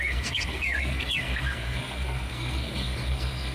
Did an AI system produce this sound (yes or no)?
yes